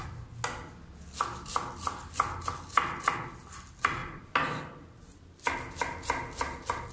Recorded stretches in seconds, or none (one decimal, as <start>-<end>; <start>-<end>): 0.0-6.9